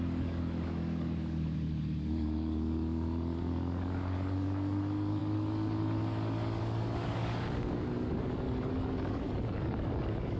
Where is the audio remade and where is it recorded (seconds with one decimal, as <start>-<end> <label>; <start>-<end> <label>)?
0.0-10.4 remade